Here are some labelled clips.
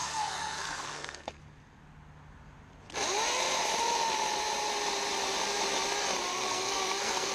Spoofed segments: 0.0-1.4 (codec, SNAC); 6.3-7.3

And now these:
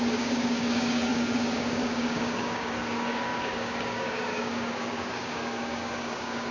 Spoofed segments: 0.0-6.5 (codec, DAC)